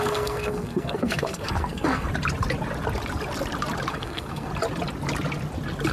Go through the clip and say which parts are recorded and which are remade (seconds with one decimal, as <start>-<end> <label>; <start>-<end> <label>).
0.0-2.1 remade; 2.1-3.9 recorded; 3.9-4.5 remade; 4.5-5.9 recorded